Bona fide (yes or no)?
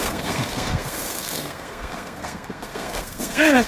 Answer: no